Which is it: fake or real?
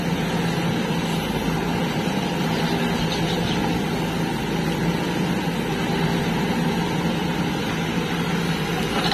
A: real